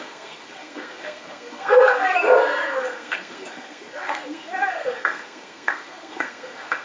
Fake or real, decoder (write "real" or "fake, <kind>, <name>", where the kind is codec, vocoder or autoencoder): fake, codec, SNAC